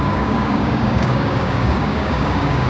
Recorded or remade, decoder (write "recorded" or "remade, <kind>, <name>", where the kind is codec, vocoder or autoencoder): remade, codec, DAC